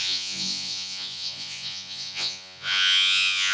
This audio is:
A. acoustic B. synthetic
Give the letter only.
B